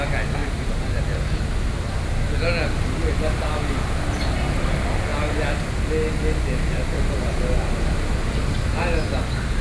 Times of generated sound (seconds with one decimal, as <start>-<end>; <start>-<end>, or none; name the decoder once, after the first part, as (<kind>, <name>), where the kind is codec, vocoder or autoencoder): 0.4-1.0 (vocoder, BigVGAN v2)

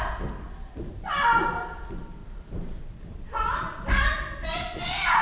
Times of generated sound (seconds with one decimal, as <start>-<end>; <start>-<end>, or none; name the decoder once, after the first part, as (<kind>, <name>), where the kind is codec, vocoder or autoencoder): 2.2-2.9 (vocoder, BigVGAN v2)

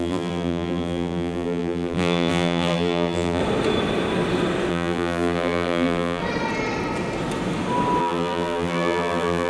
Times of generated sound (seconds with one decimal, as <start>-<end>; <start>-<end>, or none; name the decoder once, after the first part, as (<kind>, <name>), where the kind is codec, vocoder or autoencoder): 0.0-3.4 (vocoder, BigVGAN v2); 4.7-6.2; 8.0-9.5

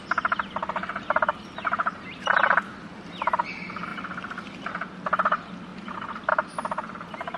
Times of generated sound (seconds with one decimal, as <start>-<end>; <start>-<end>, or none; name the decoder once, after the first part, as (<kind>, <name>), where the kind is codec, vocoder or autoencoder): none

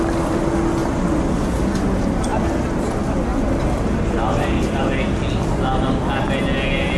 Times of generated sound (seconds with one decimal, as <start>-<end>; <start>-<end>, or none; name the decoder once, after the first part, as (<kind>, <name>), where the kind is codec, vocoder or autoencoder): 2.3-2.9 (vocoder, BigVGAN v2)